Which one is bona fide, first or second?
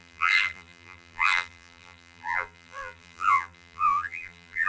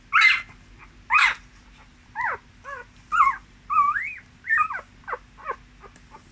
second